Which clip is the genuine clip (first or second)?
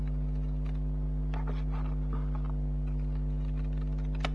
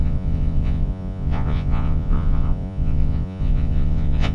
first